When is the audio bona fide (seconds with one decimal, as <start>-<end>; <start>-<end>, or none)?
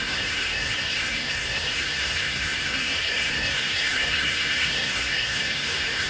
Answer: none